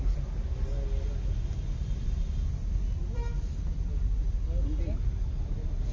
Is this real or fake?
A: real